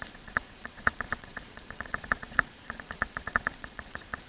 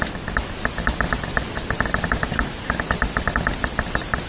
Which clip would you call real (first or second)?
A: second